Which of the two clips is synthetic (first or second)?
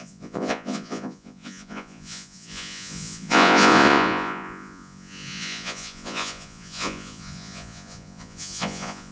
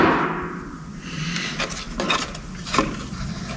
first